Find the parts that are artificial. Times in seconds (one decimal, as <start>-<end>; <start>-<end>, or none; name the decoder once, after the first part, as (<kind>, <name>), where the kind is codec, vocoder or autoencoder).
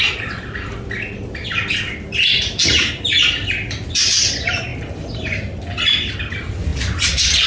2.6-3.3 (vocoder, BigVGAN v2)